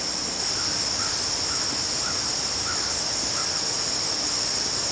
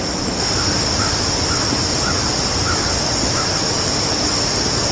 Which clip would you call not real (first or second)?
second